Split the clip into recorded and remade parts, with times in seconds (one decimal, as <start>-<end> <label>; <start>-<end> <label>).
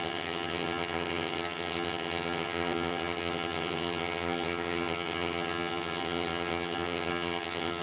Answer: 0.0-7.8 remade